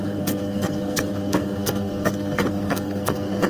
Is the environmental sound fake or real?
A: fake